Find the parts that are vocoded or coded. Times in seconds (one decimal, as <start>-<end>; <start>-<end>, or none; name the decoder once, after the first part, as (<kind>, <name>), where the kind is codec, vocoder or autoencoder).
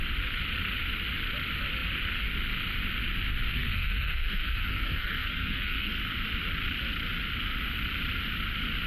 3.5-5.9 (codec, SNAC)